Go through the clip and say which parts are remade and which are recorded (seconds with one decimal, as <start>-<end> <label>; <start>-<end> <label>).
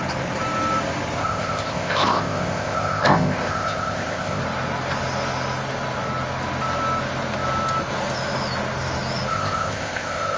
0.0-1.2 recorded; 1.2-4.4 remade; 4.4-9.3 recorded; 9.3-10.4 remade